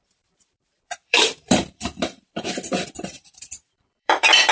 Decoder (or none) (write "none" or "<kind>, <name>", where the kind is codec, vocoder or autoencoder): vocoder, BigVGAN v2